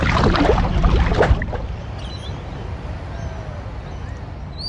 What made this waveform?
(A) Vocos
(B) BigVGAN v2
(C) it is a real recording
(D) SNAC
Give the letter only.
C